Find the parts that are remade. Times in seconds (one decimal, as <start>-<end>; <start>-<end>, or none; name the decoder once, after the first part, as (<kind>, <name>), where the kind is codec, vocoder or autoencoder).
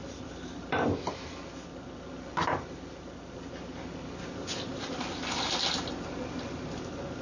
none